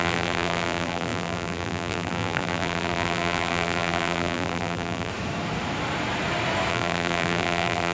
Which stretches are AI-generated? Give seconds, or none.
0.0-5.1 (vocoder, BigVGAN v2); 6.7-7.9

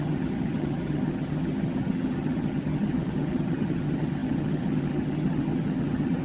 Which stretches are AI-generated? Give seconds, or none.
0.0-6.2 (vocoder, HiFi-GAN)

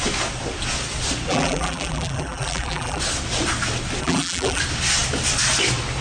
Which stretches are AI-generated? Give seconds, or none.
1.3-3.0 (vocoder, BigVGAN v2); 4.0-4.6

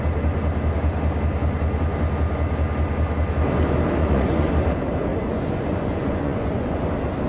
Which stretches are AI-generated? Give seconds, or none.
4.0-4.5 (vocoder, Vocos); 5.1-6.8

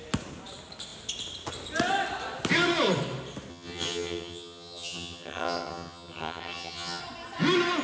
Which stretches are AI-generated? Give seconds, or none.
3.5-7.0 (vocoder, HiFi-GAN)

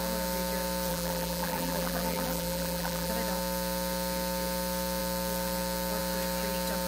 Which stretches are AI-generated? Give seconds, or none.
0.9-3.1 (vocoder, BigVGAN v2)

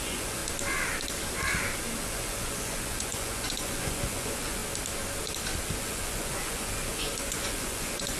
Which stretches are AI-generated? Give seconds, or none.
0.0-0.4 (vocoder, Vocos); 2.0-4.6; 5.8-8.2